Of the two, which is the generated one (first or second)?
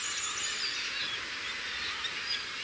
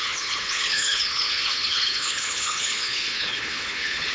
second